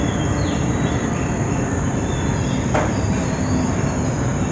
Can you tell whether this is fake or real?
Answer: real